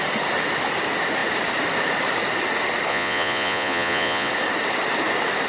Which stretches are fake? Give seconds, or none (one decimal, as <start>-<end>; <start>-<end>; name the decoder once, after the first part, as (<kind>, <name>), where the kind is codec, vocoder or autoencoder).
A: 2.9-4.3 (vocoder, Vocos)